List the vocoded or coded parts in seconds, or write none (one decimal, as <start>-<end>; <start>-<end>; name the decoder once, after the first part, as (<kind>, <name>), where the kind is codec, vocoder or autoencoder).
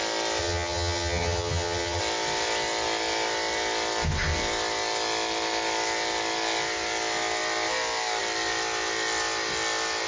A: 0.4-2.0 (vocoder, HiFi-GAN)